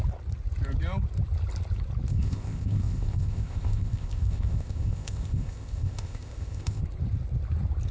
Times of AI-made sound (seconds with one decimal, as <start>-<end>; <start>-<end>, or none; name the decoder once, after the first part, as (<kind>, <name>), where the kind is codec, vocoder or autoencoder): 2.1-6.8 (codec, ZipCodec)